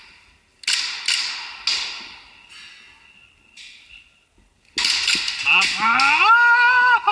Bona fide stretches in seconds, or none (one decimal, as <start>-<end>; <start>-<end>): 0.0-7.1